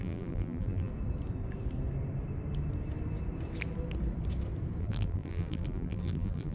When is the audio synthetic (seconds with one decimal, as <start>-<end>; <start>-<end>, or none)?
0.0-0.9; 4.8-6.5